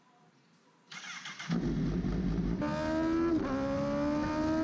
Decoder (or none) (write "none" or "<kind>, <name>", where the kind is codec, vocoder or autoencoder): none